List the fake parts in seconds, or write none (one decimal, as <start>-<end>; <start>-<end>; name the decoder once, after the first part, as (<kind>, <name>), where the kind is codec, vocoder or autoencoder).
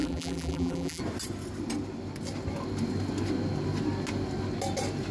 0.0-1.0 (vocoder, BigVGAN v2)